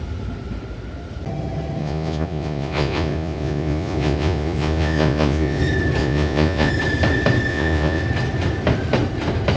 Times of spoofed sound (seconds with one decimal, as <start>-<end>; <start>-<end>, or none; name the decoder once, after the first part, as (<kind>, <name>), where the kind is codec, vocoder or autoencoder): 1.8-5.6 (vocoder, Vocos); 6.0-6.7; 7.5-8.0